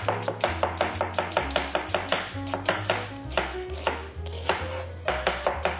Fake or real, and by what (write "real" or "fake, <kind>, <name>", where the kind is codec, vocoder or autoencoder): real